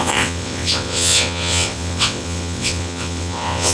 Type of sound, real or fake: fake